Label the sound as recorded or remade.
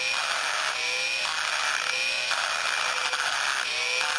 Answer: recorded